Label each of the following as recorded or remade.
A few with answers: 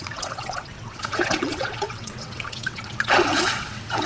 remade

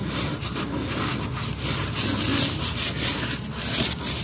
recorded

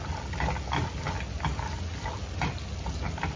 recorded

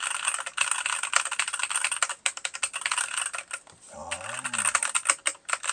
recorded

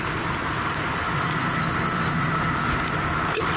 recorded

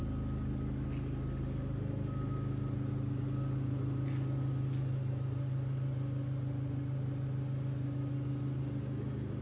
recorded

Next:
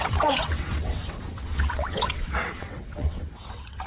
remade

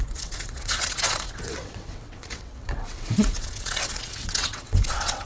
remade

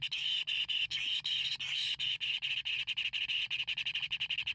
recorded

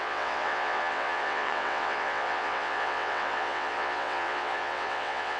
remade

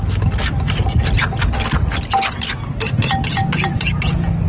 recorded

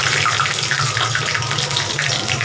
recorded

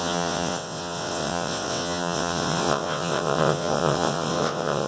remade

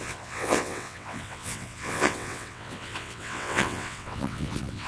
remade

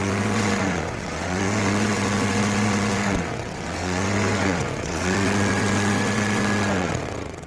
remade